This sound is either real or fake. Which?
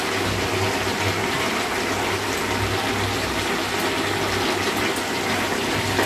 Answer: real